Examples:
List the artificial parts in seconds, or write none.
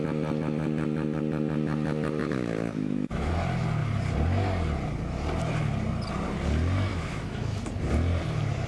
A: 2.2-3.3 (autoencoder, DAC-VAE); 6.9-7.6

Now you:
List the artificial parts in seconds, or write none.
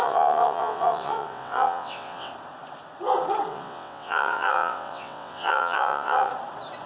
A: 0.0-2.3 (vocoder, WaveNeXt); 3.5-6.3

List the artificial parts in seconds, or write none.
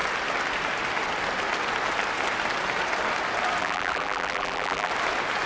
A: 3.6-4.9 (vocoder, BigVGAN v2)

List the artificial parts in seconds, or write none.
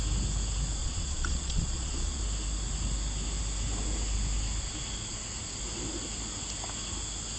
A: 0.8-2.2 (vocoder, Vocos)